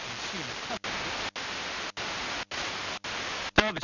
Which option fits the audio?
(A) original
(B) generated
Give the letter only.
A